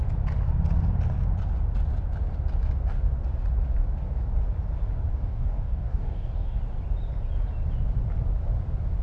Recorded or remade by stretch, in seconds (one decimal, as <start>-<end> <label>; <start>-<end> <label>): 0.0-5.1 recorded; 5.1-6.6 remade; 6.6-9.0 recorded